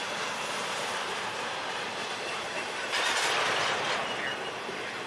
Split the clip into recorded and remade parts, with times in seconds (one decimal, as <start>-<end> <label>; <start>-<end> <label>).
0.0-0.6 recorded; 0.6-3.5 remade; 3.5-5.1 recorded